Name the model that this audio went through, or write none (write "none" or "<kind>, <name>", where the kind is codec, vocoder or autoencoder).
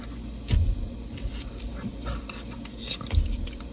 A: none